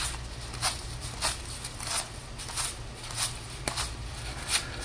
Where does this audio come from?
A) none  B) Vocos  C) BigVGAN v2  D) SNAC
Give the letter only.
A